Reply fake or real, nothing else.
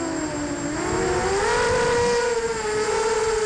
real